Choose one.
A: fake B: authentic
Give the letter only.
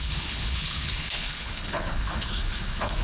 A